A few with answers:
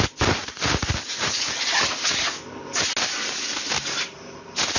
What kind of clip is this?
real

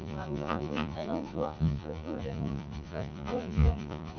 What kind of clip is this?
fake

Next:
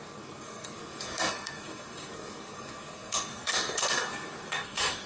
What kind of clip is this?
fake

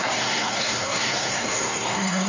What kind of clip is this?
fake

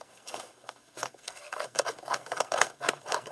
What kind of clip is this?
fake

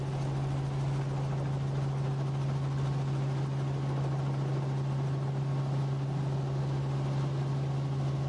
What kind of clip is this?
real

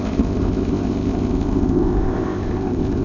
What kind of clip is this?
fake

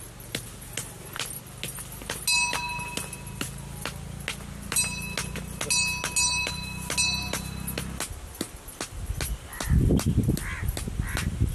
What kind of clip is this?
real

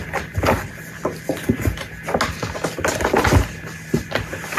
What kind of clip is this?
real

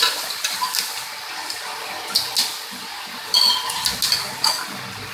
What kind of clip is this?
real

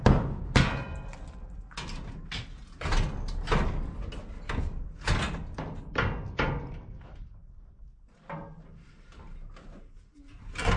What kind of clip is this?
real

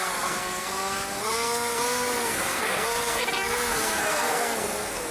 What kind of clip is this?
fake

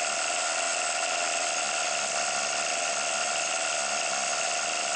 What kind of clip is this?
real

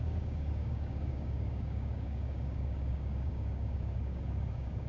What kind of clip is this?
fake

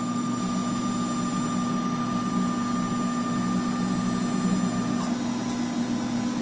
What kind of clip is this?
real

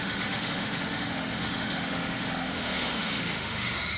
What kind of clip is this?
fake